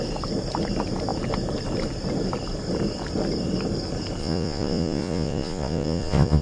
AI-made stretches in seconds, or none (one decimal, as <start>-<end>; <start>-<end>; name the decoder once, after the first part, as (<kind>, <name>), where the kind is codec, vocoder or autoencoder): 4.2-6.4 (vocoder, Vocos)